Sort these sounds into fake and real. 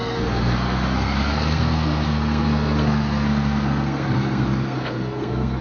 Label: fake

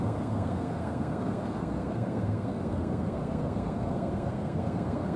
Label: fake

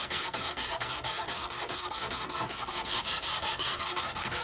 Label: fake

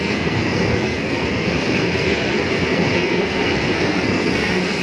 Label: fake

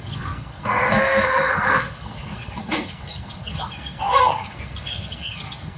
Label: fake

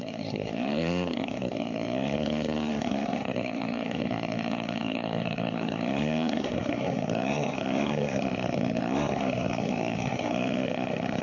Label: fake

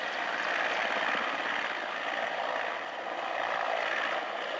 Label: real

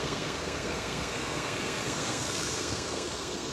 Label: fake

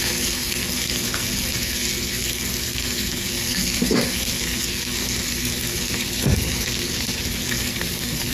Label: fake